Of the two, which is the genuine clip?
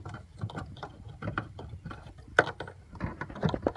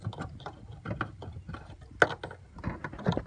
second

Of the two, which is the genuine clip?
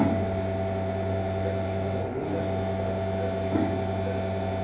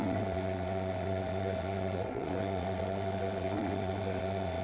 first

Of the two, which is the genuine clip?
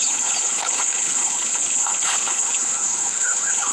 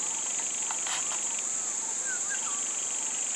second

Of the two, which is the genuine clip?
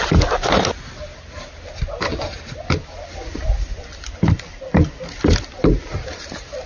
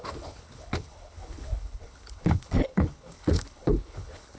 first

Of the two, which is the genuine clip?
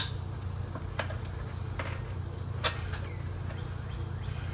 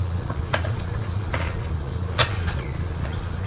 first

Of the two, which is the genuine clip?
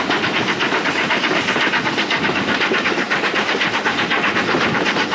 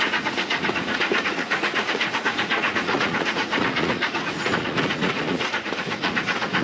first